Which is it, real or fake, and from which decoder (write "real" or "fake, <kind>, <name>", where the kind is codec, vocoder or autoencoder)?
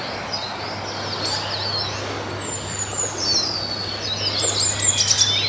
real